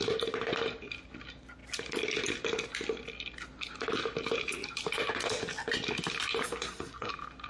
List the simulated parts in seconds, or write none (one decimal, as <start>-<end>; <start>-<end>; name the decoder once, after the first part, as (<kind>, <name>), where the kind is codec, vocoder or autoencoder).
6.4-7.1 (codec, SNAC)